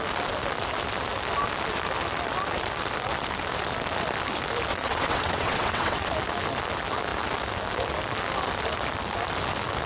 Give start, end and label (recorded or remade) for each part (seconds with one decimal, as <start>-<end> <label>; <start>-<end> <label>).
0.0-4.7 recorded; 4.7-6.1 remade; 6.1-9.9 recorded